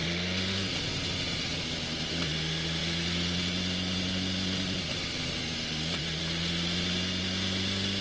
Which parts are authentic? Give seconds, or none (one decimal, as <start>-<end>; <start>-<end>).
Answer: 0.0-8.0